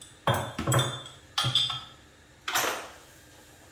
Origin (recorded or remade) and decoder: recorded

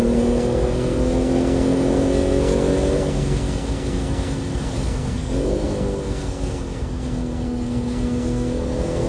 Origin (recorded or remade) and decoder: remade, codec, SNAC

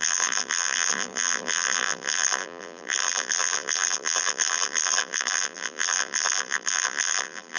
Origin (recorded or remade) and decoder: remade, vocoder, BigVGAN v2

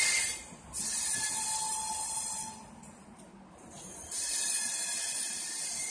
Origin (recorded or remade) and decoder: recorded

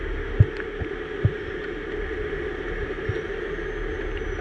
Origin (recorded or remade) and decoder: recorded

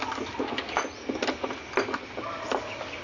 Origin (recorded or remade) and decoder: recorded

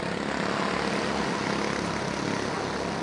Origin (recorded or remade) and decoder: recorded